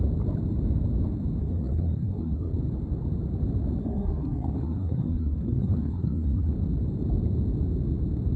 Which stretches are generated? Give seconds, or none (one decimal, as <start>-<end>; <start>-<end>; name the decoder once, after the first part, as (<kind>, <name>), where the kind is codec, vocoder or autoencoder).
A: 1.4-2.5 (codec, SNAC); 3.8-6.5